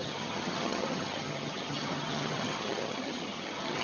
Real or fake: fake